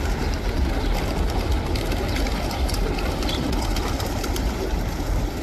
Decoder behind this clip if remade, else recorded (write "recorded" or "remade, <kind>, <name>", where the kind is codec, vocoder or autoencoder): recorded